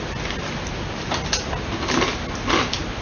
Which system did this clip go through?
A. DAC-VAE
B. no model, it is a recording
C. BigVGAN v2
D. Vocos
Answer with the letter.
B